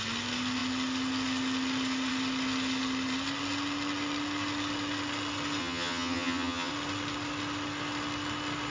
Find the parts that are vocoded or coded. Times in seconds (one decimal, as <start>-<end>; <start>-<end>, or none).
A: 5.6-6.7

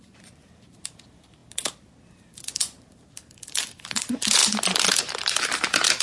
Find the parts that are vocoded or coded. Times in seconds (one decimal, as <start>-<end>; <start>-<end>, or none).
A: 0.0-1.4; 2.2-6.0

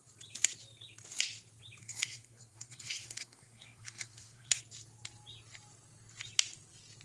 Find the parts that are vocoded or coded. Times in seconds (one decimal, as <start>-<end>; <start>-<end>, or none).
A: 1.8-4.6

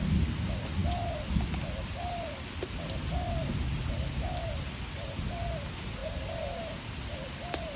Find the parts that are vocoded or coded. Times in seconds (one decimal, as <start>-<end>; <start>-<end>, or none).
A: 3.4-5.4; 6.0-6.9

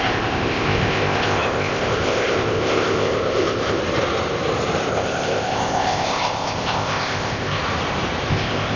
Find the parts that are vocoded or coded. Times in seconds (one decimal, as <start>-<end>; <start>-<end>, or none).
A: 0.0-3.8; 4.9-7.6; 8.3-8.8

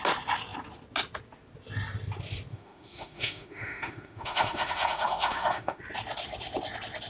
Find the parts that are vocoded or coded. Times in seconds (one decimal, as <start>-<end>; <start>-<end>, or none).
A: 2.5-5.8

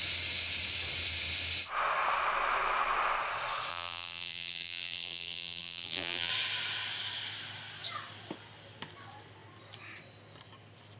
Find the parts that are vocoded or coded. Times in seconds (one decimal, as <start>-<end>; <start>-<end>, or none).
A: 3.7-6.3